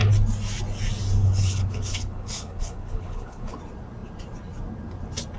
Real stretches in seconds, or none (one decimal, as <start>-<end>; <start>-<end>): 0.0-1.2; 3.6-5.4